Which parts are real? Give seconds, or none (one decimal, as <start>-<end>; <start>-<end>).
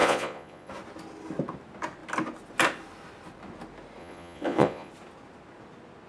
0.7-4.0; 4.9-6.1